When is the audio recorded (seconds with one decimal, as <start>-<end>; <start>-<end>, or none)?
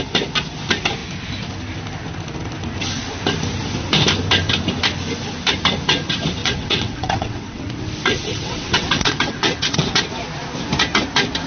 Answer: 0.0-6.4; 7.7-8.2; 10.0-11.5